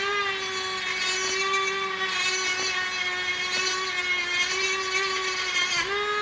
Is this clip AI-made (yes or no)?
no